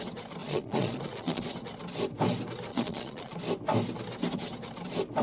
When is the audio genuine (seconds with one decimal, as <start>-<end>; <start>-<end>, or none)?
0.0-0.4; 1.4-2.7; 3.4-5.2